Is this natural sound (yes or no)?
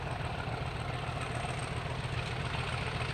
yes